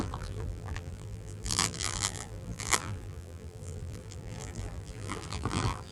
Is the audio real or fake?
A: fake